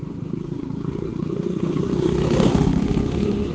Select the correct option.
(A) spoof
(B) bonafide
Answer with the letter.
A